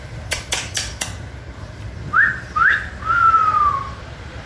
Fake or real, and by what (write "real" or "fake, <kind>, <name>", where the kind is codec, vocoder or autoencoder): fake, vocoder, BigVGAN v2